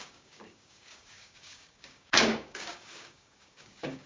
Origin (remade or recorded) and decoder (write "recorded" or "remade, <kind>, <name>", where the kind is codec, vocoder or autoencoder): remade, codec, DAC